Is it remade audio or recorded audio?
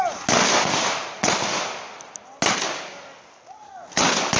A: recorded